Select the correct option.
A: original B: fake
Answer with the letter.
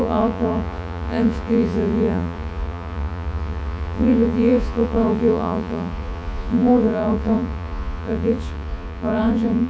B